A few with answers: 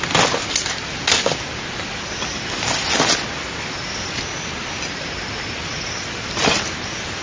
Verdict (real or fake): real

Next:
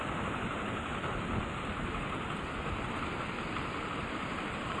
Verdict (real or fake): fake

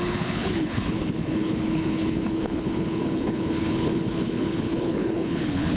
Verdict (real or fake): fake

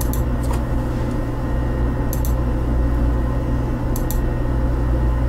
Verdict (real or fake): real